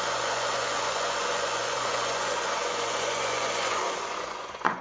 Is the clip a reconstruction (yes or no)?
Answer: yes